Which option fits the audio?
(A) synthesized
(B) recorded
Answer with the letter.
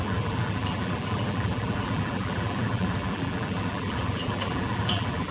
A